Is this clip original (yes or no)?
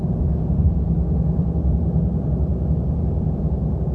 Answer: yes